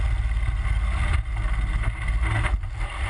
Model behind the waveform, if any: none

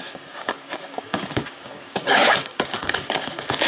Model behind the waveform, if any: codec, DAC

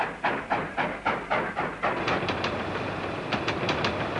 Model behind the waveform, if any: none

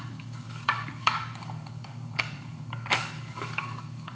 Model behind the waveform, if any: codec, DAC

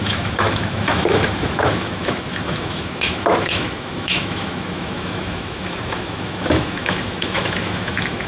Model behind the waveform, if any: autoencoder, DAC-VAE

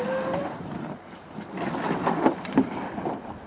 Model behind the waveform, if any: none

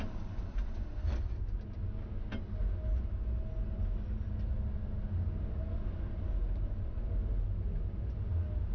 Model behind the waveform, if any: none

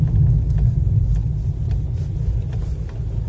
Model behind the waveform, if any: none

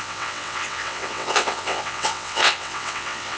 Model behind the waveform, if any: vocoder, WaveNeXt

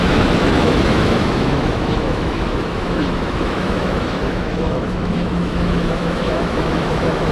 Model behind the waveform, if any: autoencoder, DAC-VAE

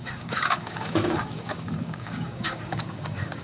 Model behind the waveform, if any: codec, DAC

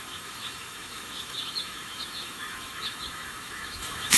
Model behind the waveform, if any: autoencoder, DAC-VAE